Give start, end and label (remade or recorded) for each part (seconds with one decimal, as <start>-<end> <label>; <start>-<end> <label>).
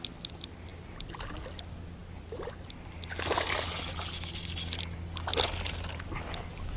0.0-6.8 recorded